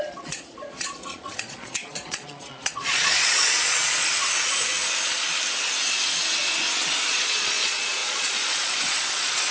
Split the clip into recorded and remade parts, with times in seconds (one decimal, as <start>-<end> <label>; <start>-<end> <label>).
0.0-4.1 remade; 4.1-7.1 recorded; 7.1-9.5 remade